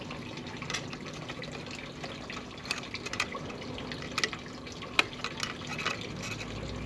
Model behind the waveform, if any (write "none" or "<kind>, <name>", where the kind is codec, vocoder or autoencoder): none